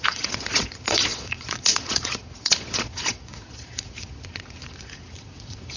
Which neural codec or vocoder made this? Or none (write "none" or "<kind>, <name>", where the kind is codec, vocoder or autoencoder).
vocoder, Vocos